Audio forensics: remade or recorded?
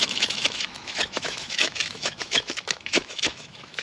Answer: remade